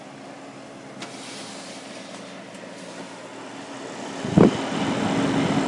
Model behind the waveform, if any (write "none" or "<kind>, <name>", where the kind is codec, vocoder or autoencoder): none